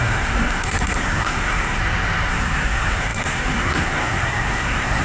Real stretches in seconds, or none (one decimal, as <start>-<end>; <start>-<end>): 1.8-2.3